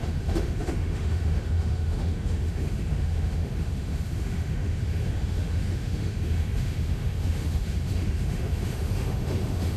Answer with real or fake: fake